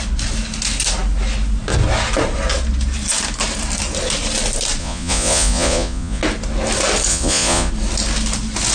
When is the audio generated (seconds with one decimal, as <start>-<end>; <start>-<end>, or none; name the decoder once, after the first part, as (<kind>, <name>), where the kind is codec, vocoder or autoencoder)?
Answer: 4.8-6.2 (vocoder, Vocos); 7.1-7.7